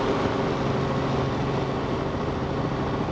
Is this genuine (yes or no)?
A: yes